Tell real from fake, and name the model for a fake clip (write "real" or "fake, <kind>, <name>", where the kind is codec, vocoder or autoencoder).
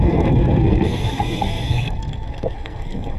fake, codec, SNAC